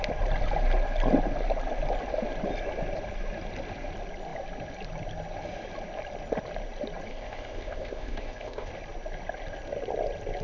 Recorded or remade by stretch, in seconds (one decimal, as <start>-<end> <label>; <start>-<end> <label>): 0.0-7.1 recorded; 7.1-8.7 remade; 8.7-10.4 recorded